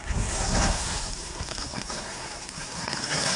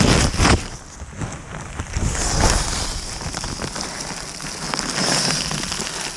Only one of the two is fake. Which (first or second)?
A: first